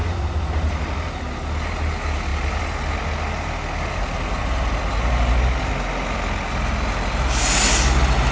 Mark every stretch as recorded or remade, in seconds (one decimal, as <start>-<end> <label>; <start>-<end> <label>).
0.0-8.3 recorded